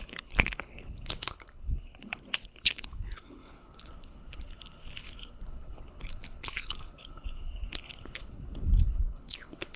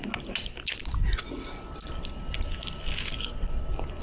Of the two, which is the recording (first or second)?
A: second